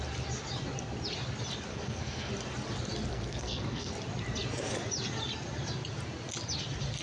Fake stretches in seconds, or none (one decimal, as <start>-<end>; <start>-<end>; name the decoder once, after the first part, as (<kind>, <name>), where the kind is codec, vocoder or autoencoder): 1.7-2.3 (codec, SNAC); 3.1-3.9